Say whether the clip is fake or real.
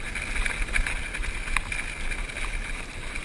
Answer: real